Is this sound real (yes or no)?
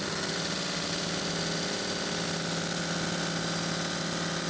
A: yes